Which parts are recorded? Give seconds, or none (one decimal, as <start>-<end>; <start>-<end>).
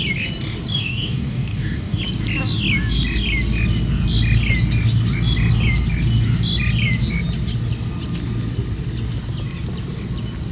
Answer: 0.0-0.7; 2.0-10.5